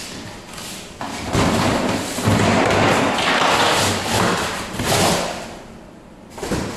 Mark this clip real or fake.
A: real